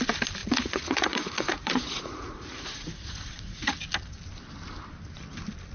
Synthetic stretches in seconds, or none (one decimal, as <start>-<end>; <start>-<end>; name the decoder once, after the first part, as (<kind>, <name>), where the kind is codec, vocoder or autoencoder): 0.4-3.8 (vocoder, Vocos)